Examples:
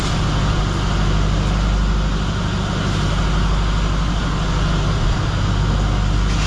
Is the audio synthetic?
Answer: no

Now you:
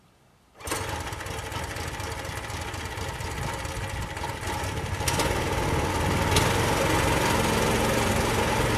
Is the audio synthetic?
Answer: no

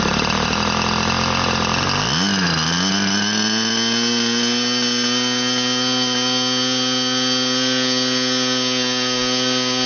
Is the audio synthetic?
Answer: no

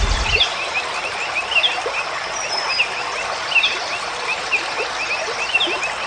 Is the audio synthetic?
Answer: no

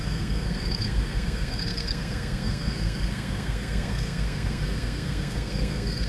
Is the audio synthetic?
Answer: yes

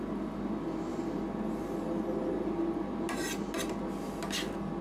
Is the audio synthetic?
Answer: no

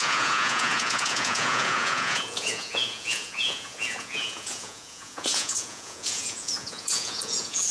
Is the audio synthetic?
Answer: yes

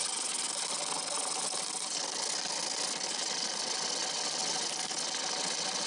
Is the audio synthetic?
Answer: no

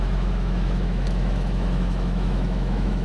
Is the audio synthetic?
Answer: yes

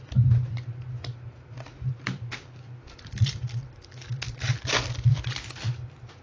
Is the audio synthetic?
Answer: no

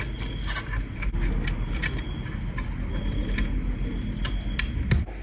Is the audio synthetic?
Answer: no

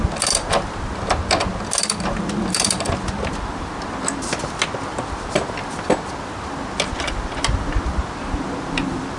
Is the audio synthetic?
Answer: no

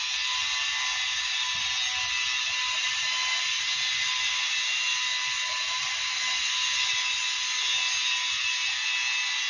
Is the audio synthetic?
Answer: no